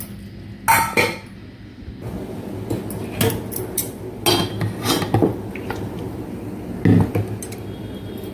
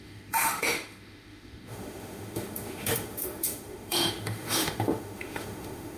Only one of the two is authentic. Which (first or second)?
first